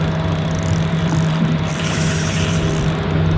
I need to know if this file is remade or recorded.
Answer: remade